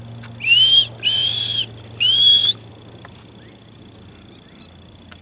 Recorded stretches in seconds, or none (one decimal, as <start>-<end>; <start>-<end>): 0.0-5.2

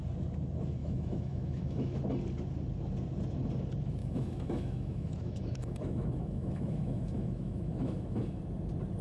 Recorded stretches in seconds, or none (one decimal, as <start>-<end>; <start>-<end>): 0.0-0.8; 2.0-4.0; 8.4-9.0

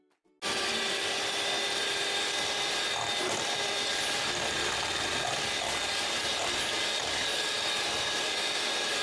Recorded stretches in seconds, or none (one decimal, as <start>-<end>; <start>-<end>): 0.0-9.0

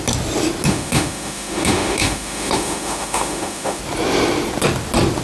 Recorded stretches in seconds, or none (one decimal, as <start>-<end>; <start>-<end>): 0.0-0.7; 3.8-5.2